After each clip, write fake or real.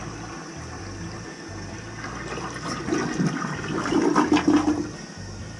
real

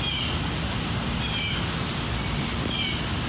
real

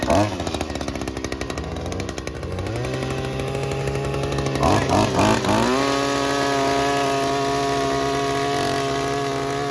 real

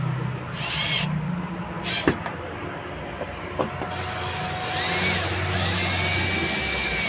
real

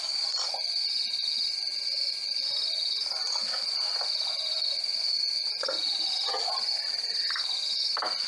real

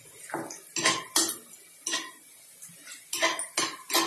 real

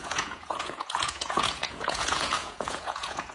fake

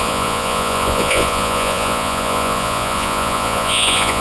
fake